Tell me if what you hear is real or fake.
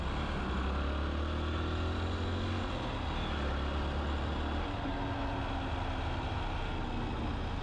real